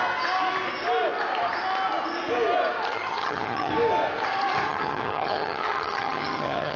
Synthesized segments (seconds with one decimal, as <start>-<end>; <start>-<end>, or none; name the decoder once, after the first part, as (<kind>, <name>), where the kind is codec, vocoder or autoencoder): 2.9-3.7 (vocoder, HiFi-GAN); 4.7-6.8